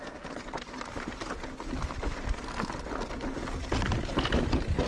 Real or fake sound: real